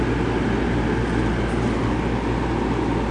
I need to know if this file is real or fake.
real